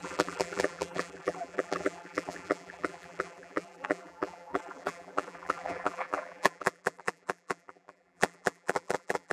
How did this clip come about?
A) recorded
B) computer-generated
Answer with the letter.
B